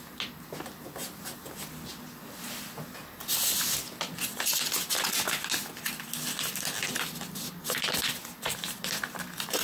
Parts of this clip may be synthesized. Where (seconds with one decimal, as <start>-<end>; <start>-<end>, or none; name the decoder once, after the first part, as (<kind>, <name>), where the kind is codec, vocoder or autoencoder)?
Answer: none